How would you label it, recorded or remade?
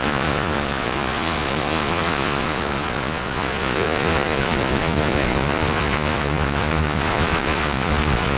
remade